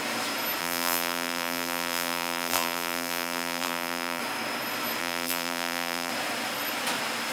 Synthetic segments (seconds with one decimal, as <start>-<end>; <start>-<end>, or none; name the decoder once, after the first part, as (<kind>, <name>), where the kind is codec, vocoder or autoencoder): 0.6-4.2 (vocoder, BigVGAN v2); 5.0-6.1

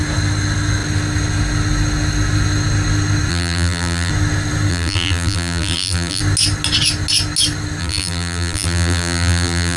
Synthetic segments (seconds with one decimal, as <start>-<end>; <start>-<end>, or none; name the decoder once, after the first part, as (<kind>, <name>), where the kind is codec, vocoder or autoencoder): 3.3-4.1 (vocoder, BigVGAN v2); 4.7-6.2; 7.8-9.8

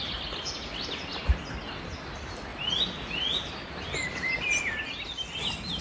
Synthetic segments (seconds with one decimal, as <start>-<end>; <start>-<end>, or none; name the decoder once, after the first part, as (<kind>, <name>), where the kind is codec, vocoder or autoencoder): 2.5-4.6 (vocoder, BigVGAN v2)

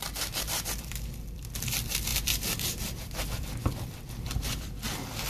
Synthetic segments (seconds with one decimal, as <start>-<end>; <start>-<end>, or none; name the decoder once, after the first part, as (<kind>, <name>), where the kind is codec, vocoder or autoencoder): 0.0-5.3 (vocoder, BigVGAN v2)

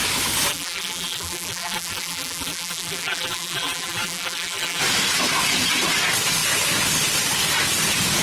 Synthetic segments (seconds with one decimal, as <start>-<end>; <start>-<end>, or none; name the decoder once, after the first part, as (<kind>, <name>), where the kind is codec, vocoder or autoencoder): 0.5-4.8 (vocoder, BigVGAN v2)

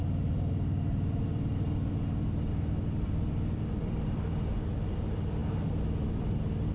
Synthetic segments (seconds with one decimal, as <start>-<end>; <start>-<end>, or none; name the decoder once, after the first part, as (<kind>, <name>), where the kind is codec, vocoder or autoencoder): 1.3-4.2 (vocoder, BigVGAN v2)

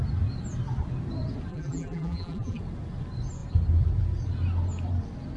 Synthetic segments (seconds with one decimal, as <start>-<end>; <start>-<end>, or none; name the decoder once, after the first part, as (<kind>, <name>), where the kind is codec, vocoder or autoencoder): 1.5-2.6 (vocoder, BigVGAN v2)

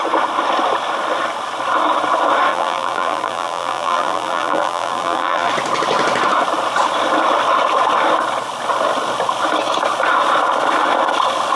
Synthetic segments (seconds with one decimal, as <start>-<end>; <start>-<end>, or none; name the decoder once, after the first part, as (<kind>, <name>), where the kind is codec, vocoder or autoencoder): 2.5-5.5 (vocoder, BigVGAN v2)